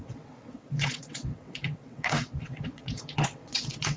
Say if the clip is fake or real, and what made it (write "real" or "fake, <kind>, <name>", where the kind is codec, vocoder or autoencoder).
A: fake, vocoder, WaveNeXt